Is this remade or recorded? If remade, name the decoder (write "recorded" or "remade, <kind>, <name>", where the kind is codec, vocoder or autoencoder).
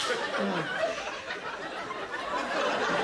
recorded